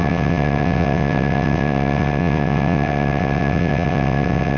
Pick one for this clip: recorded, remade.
remade